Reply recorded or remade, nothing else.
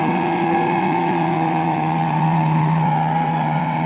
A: remade